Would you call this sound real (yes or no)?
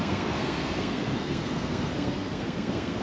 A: no